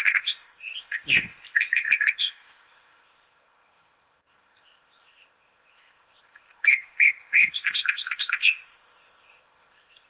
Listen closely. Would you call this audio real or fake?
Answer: fake